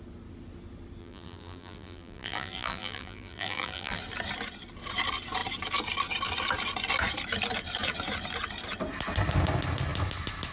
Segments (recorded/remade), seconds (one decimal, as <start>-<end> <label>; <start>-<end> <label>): 0.0-1.0 recorded; 1.0-4.0 remade; 4.0-10.5 recorded